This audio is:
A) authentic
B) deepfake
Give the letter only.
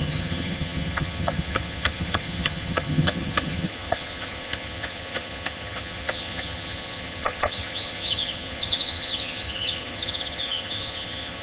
B